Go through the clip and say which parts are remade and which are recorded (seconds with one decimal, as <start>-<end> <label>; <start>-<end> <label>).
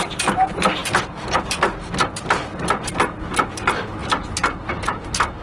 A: 0.0-5.4 recorded